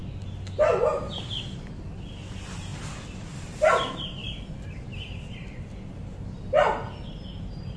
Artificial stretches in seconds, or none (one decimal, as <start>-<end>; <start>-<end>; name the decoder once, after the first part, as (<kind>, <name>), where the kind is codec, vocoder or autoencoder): none